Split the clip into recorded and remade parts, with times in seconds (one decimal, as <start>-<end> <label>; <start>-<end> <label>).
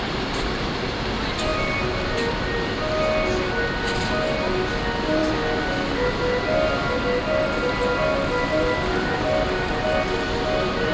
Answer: 0.0-10.9 recorded